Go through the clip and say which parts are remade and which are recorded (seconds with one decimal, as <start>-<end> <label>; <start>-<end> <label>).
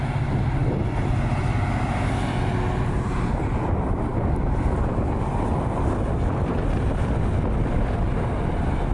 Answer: 0.0-8.9 recorded